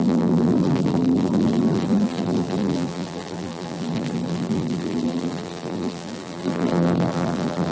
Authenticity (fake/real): fake